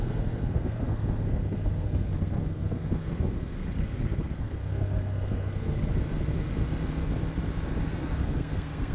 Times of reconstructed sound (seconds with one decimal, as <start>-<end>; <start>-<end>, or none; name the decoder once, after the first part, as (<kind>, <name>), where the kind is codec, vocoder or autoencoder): 0.0-5.9 (codec, SNAC); 7.9-8.9